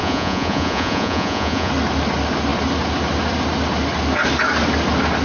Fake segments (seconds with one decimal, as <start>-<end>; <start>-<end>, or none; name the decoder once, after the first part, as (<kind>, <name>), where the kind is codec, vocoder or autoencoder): 0.0-1.7 (vocoder, Vocos)